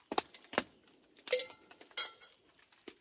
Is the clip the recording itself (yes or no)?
yes